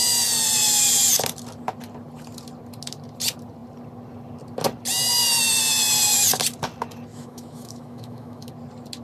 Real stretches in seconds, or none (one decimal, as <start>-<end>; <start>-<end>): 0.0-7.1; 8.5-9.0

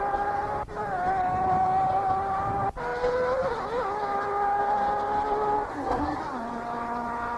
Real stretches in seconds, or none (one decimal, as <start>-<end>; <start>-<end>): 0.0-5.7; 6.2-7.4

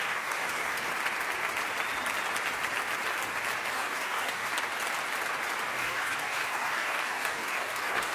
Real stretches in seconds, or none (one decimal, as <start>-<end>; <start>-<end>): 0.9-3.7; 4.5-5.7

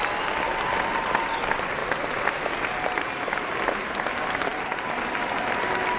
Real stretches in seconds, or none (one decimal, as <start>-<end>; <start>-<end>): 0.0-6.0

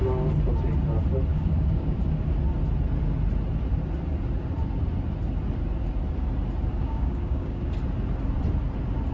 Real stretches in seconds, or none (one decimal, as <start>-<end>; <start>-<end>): 0.0-1.3; 2.0-6.8; 7.7-9.1